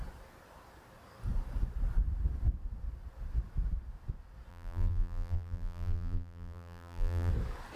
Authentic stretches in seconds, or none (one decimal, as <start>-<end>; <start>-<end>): 0.0-4.5; 7.3-7.8